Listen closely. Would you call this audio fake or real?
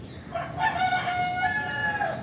real